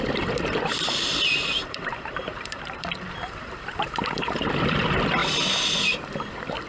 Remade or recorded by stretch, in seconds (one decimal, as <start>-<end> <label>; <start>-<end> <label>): 0.0-1.3 recorded; 1.3-4.8 remade; 4.8-6.7 recorded